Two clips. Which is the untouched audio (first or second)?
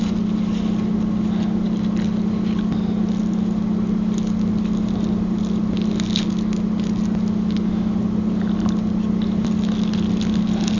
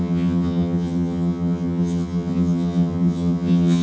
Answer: first